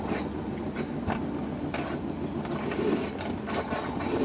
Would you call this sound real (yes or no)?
yes